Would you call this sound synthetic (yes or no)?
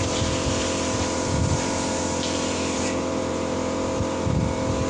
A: yes